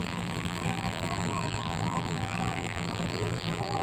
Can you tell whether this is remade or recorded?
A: remade